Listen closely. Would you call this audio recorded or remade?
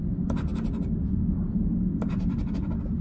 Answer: recorded